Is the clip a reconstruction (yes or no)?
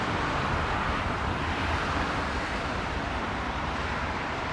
yes